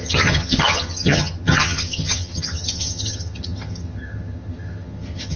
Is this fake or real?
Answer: fake